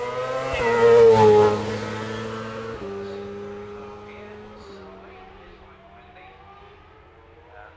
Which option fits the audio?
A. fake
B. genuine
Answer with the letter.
B